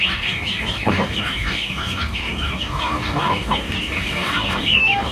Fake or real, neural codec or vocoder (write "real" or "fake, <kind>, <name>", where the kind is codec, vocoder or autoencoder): fake, codec, DAC